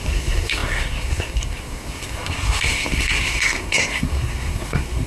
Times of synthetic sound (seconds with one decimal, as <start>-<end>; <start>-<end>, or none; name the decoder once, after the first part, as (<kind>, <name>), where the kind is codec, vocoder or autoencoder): 0.0-5.1 (codec, SNAC)